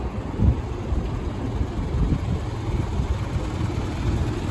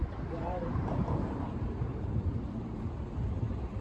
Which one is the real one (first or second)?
first